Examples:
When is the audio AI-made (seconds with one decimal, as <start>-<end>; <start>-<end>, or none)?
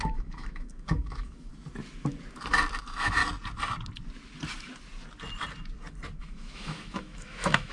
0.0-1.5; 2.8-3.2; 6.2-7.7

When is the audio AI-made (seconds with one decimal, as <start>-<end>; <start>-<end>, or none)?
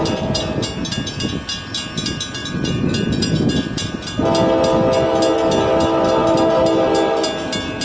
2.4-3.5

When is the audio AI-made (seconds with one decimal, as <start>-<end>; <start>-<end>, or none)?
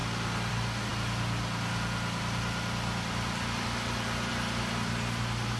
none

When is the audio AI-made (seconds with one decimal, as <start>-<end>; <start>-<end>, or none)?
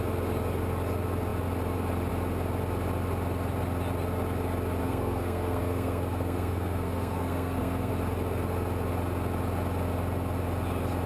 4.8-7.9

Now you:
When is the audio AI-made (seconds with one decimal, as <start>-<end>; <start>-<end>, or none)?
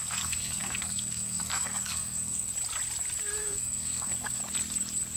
0.0-2.5; 3.4-4.4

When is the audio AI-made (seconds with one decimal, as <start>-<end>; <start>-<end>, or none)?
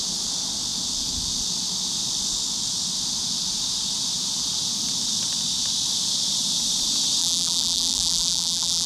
7.2-8.9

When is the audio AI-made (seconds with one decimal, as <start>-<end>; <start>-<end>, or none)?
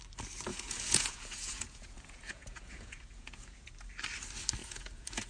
0.5-3.7; 4.6-5.3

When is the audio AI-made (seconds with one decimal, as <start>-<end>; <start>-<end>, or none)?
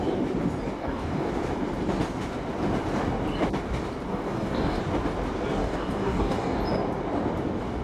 0.8-1.3; 4.1-4.8; 5.6-6.6